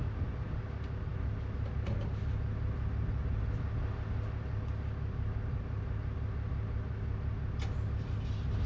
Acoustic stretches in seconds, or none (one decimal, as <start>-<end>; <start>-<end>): 0.0-8.7